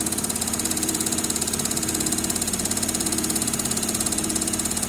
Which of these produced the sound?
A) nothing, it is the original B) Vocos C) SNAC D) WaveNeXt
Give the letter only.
B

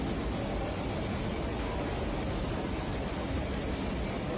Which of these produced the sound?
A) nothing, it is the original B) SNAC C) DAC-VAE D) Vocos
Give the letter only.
A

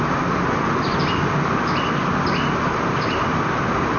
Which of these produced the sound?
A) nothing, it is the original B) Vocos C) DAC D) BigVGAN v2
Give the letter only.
A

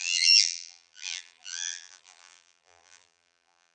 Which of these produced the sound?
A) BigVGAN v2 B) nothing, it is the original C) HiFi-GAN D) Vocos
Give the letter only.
A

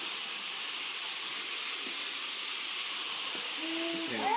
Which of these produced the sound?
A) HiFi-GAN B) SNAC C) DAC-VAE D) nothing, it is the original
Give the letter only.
D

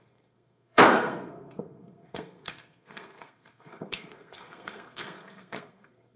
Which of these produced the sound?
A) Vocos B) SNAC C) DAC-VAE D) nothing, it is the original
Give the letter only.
B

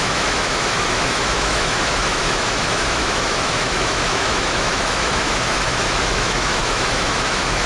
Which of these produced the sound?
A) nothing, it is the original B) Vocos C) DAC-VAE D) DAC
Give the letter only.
C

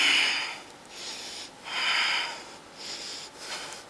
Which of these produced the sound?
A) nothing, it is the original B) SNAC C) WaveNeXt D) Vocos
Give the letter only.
A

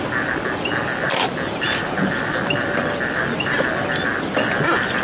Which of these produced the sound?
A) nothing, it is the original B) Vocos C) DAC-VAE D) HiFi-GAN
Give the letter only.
A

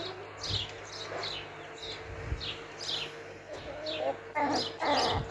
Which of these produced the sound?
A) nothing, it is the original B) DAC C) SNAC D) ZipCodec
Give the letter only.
A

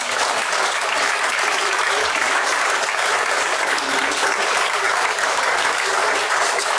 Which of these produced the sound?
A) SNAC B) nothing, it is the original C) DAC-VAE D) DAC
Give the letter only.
D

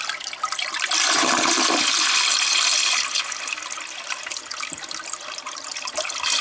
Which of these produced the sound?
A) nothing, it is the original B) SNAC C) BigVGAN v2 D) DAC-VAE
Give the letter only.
A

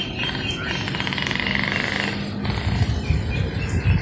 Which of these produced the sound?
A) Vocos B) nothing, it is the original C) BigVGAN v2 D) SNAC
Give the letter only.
B